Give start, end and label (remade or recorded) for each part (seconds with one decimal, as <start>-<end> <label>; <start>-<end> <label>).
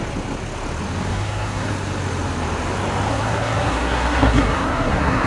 0.0-1.1 recorded; 1.1-1.7 remade; 1.7-3.1 recorded; 3.1-5.3 remade